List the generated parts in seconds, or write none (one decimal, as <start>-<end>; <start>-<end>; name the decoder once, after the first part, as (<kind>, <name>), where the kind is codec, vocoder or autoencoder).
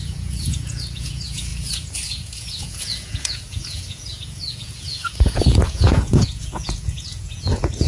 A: 0.0-7.9 (vocoder, Vocos)